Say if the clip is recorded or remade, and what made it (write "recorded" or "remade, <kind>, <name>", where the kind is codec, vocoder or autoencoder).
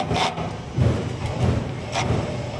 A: recorded